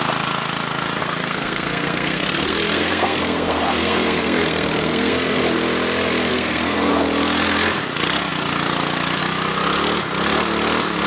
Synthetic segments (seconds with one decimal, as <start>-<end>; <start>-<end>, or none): 1.0-5.4; 6.3-6.9